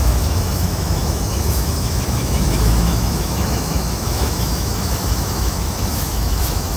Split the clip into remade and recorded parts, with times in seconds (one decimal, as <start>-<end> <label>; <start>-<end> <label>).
0.0-6.8 remade